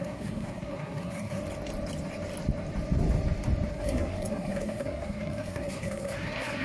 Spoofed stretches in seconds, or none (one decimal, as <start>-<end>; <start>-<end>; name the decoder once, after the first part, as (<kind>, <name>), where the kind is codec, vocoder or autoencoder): 0.0-1.4 (codec, SNAC); 3.7-6.6